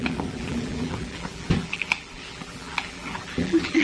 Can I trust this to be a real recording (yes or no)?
no